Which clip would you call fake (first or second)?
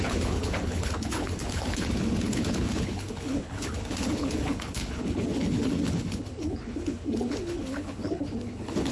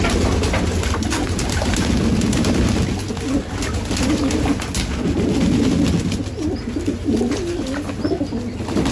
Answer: first